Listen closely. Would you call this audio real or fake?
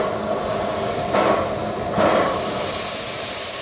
real